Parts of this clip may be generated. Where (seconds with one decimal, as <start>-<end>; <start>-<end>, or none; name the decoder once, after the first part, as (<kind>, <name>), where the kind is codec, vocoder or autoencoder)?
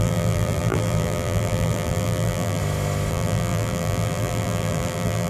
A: 0.0-2.6 (vocoder, BigVGAN v2); 3.1-5.3